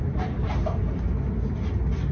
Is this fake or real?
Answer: real